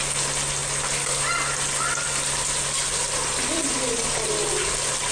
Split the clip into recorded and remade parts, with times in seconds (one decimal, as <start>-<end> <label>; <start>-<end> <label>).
0.0-3.0 recorded; 3.0-4.4 remade; 4.4-5.1 recorded